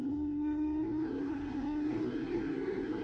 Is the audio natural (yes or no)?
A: no